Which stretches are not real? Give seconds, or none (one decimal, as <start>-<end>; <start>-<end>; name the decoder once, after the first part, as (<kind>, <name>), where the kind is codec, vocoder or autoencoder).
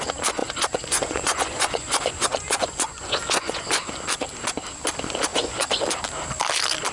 0.4-3.9 (vocoder, Vocos); 5.3-5.8